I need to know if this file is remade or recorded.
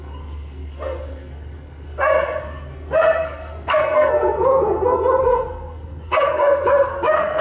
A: remade